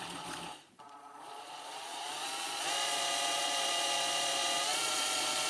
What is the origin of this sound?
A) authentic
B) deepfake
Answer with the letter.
B